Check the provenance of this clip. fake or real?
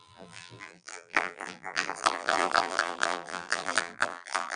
fake